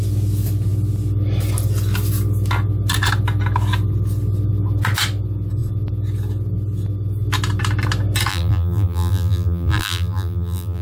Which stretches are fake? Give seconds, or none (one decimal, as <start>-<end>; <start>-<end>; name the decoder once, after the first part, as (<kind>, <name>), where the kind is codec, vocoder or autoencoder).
8.3-10.8 (vocoder, BigVGAN v2)